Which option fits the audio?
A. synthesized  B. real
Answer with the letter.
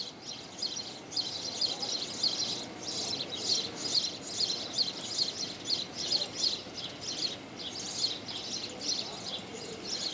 B